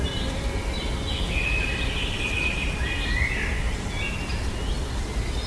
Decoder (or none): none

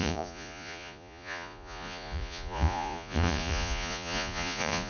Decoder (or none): vocoder, Vocos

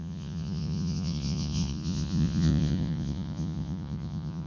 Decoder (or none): vocoder, Vocos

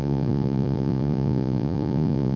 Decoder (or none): vocoder, Vocos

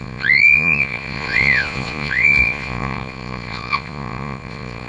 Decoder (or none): vocoder, Vocos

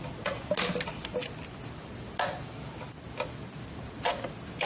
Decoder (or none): none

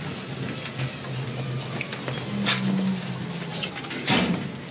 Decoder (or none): none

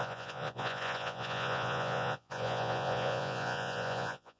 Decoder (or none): vocoder, Vocos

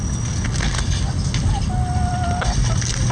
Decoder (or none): none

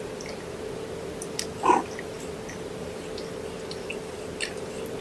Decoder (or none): none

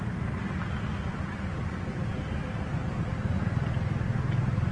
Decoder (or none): none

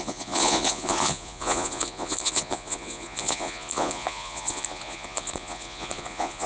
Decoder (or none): vocoder, Vocos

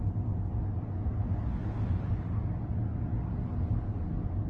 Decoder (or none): none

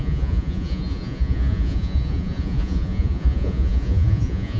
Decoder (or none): vocoder, Vocos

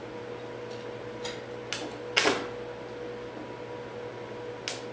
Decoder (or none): none